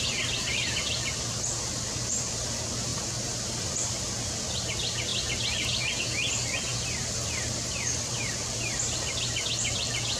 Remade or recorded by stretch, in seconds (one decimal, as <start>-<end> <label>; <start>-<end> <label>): 0.0-6.7 recorded; 6.7-9.4 remade; 9.4-10.2 recorded